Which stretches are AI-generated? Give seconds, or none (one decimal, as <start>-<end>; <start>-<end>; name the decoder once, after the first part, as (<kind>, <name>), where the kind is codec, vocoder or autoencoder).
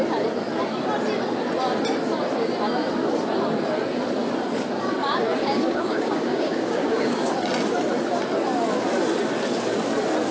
5.4-7.3 (codec, DAC)